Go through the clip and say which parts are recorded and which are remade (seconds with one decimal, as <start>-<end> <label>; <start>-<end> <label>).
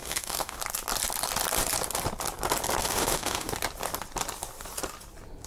0.0-0.6 remade; 0.6-2.8 recorded; 2.8-3.5 remade; 3.5-5.5 recorded